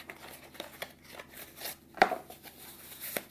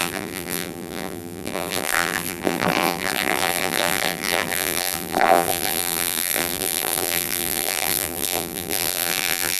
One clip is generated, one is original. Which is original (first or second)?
first